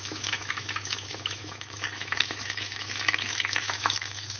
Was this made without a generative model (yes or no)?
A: no